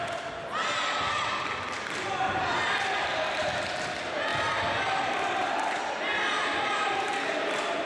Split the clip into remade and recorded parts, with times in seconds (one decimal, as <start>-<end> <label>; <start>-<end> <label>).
0.0-7.9 recorded